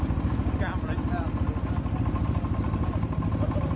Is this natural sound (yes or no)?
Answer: yes